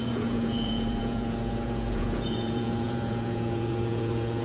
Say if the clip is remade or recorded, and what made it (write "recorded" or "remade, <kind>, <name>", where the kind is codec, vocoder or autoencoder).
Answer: remade, vocoder, Vocos